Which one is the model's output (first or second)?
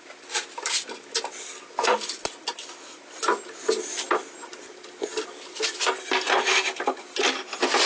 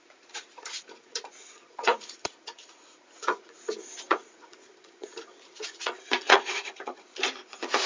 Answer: second